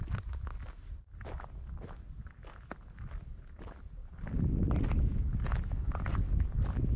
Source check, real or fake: real